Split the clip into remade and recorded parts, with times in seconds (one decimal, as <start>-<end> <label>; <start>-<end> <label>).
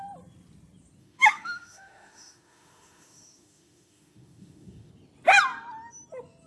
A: 0.0-1.0 recorded; 1.0-4.9 remade; 4.9-6.5 recorded